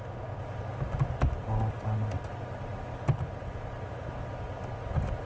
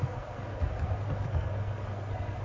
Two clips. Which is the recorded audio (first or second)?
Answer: first